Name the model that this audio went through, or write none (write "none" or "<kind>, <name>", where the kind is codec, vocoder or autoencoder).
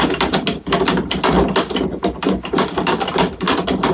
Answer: none